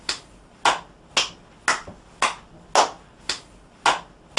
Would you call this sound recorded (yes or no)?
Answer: yes